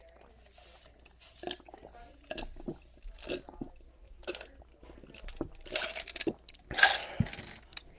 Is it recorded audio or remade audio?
recorded